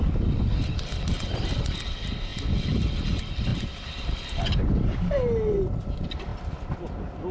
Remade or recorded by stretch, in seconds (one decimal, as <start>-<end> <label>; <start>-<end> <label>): 0.0-3.5 recorded; 3.5-4.6 remade; 4.6-7.3 recorded